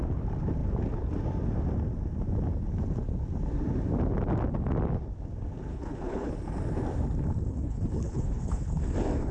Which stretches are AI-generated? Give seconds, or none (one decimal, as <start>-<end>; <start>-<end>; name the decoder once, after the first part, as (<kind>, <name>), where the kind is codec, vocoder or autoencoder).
5.7-6.3 (codec, HILCodec); 7.5-8.8